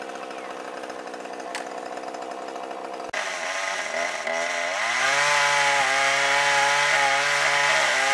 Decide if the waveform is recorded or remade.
recorded